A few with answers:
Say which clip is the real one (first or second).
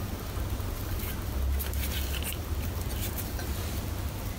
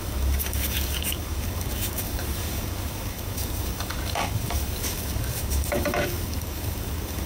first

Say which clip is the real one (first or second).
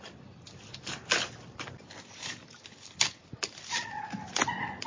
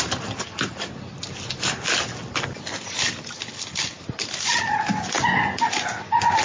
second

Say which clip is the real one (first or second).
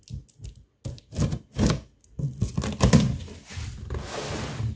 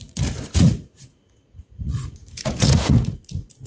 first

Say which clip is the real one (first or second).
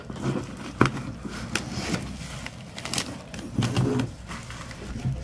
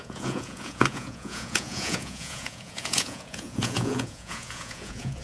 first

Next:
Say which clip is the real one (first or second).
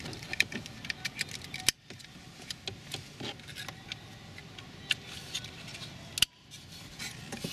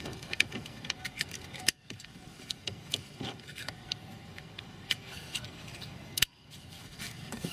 first